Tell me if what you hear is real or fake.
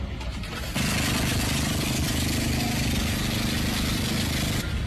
real